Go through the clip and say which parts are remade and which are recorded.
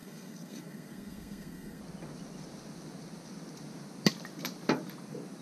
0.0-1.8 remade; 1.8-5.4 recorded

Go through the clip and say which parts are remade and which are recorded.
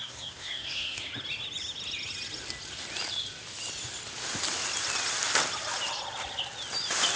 0.0-1.1 remade; 1.1-7.2 recorded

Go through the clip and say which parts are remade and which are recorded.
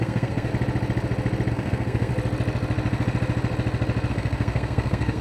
0.0-0.5 remade; 0.5-1.5 recorded; 1.5-2.1 remade; 2.1-4.1 recorded; 4.1-5.2 remade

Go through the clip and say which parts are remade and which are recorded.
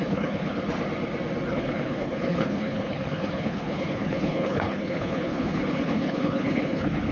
0.0-0.6 remade; 0.6-1.5 recorded; 1.5-7.1 remade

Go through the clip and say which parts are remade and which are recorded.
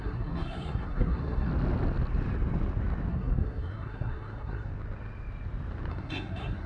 0.0-1.5 remade; 1.5-3.1 recorded; 3.1-4.7 remade; 4.7-5.9 recorded; 5.9-6.7 remade